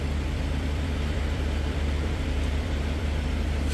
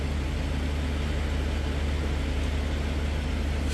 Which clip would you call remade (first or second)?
first